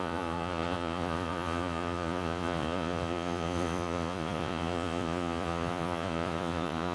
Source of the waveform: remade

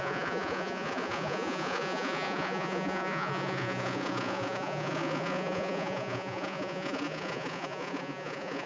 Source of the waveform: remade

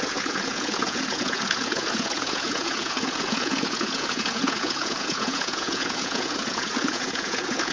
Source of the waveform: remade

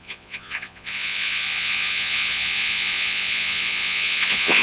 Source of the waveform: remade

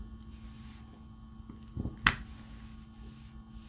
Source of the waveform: recorded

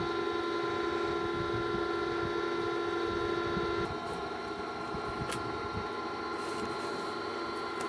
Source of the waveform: recorded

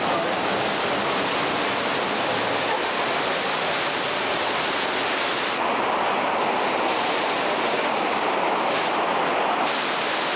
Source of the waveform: recorded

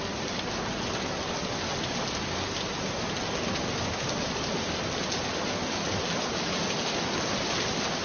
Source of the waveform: recorded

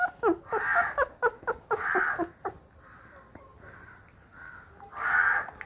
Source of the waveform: recorded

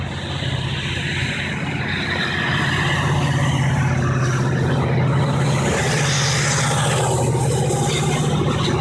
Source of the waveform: recorded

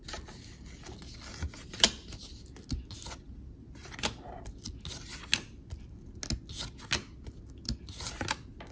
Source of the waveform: recorded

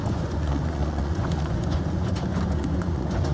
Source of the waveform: remade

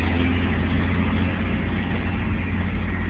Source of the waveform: recorded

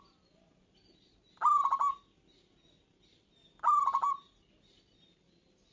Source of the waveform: recorded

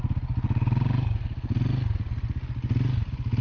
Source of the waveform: recorded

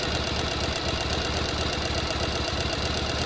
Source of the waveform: recorded